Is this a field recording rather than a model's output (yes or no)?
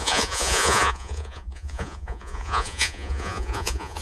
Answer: no